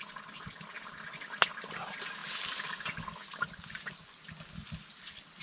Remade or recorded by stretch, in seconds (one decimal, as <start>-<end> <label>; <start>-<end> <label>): 0.0-5.4 recorded